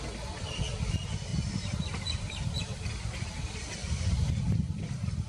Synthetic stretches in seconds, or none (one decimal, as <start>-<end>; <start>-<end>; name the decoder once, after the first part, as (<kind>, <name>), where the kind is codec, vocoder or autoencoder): 1.3-2.9 (vocoder, BigVGAN v2); 3.8-5.3